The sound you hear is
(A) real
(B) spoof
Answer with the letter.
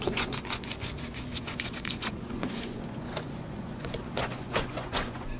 B